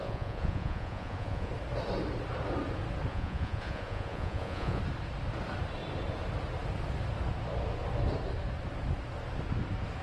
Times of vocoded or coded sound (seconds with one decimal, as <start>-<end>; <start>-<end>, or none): 0.0-1.5; 3.1-4.8